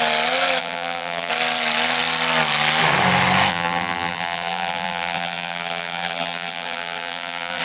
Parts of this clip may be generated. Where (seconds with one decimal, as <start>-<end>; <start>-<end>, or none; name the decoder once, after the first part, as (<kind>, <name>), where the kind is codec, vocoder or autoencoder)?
0.6-1.3 (vocoder, BigVGAN v2); 3.5-7.6